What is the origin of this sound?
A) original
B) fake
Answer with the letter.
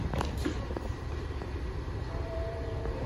B